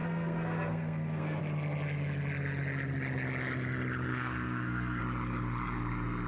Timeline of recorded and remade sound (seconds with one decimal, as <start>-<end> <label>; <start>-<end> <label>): 0.0-1.4 remade; 1.4-4.1 recorded; 4.1-5.0 remade; 5.0-6.3 recorded